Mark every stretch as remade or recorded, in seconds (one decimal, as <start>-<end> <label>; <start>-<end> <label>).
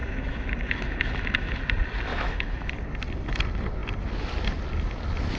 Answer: 0.0-1.6 remade; 1.6-2.1 recorded; 2.1-2.7 remade; 2.7-5.4 recorded